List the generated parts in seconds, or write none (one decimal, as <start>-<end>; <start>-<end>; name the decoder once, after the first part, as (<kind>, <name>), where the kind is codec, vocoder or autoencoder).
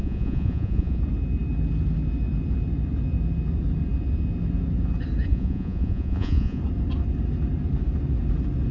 0.0-1.0 (vocoder, Vocos); 5.3-6.6